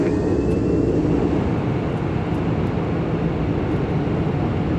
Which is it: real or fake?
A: real